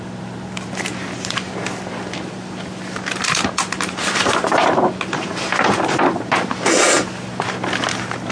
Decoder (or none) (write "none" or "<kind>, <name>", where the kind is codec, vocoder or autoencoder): none